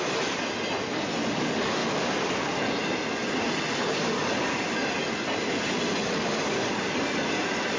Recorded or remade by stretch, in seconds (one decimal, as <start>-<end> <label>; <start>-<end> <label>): 0.0-7.8 recorded